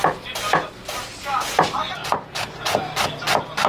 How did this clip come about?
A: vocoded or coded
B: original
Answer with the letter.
B